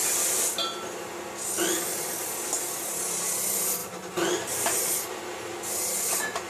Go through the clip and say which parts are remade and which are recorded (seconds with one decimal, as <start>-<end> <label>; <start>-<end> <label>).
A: 0.0-3.8 recorded; 3.8-4.9 remade; 4.9-6.5 recorded